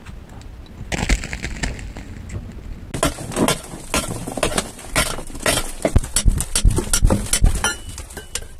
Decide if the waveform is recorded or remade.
recorded